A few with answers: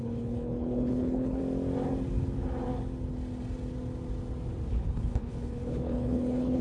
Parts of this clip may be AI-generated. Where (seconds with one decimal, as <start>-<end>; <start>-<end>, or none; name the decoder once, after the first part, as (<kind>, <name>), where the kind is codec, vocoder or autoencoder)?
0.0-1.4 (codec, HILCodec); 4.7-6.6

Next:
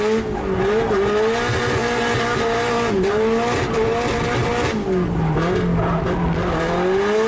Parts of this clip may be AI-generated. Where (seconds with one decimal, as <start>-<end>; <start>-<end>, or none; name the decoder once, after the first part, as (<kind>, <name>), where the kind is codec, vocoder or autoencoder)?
none

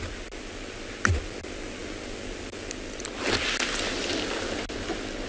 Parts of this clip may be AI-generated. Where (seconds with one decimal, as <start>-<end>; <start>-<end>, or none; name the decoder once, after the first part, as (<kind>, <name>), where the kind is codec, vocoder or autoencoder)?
none

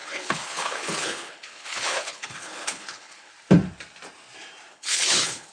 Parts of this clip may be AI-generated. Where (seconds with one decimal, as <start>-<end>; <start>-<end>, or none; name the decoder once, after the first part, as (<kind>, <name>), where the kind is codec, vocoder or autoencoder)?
0.0-3.3 (codec, HILCodec); 4.7-5.5

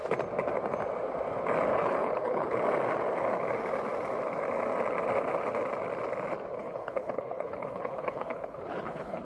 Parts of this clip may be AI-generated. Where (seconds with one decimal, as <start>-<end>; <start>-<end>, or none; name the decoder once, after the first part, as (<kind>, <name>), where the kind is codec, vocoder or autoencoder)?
1.7-2.6 (codec, HILCodec); 6.6-9.2

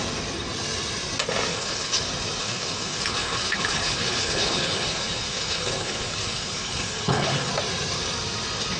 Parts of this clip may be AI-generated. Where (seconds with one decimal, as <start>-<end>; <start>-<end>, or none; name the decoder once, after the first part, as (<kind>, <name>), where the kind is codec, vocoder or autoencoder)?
1.5-2.0 (codec, HILCodec); 2.4-7.5

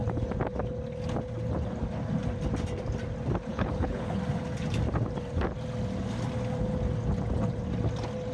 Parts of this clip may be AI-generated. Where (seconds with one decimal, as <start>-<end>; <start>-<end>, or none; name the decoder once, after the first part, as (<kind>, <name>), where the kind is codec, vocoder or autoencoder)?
3.5-4.2 (codec, HILCodec)

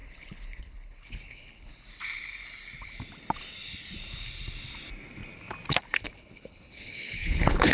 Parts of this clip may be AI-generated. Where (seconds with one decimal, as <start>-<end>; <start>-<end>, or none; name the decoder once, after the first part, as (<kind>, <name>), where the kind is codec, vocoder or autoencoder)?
0.0-1.7 (codec, HILCodec); 5.7-7.7